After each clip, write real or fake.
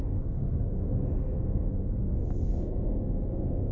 fake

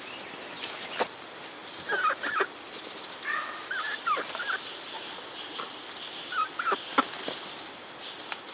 real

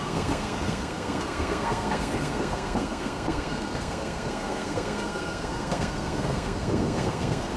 fake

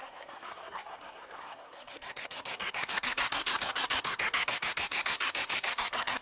fake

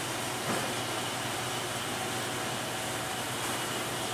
real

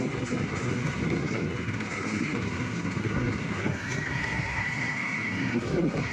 fake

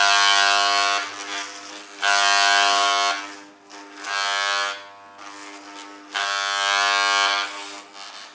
real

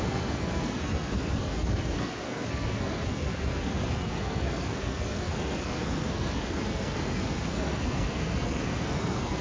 fake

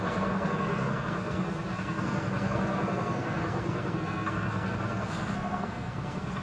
fake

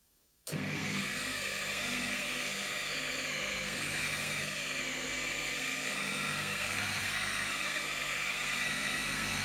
fake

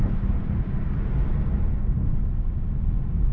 real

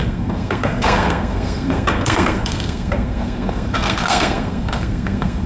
fake